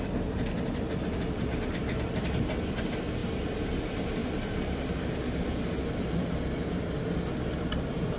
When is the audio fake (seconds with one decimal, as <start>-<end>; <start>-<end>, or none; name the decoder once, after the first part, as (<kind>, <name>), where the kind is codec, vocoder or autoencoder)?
none